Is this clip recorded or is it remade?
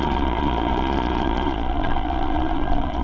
remade